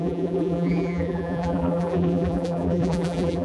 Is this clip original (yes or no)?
no